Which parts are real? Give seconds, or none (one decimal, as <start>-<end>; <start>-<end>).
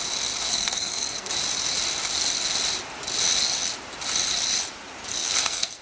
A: 0.0-0.6; 1.3-5.1